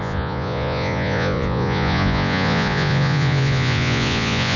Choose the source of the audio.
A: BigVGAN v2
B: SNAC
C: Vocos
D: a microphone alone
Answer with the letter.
C